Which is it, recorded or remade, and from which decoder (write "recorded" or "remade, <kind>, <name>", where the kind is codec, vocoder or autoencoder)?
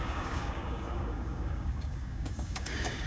remade, codec, DAC